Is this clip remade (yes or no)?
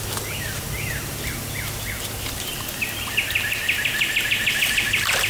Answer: no